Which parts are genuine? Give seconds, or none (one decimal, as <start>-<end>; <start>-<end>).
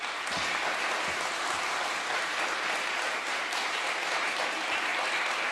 4.9-5.5